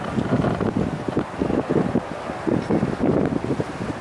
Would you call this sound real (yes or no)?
yes